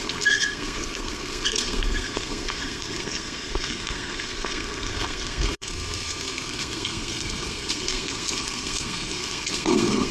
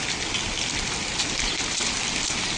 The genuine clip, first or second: second